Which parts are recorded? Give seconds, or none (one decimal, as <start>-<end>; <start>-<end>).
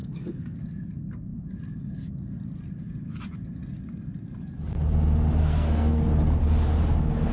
0.6-5.4; 6.0-7.3